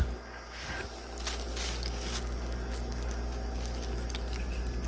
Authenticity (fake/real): real